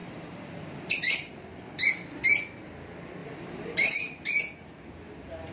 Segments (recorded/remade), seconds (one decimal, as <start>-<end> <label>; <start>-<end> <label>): 0.0-1.3 remade; 1.3-3.2 recorded; 3.2-4.2 remade; 4.2-5.5 recorded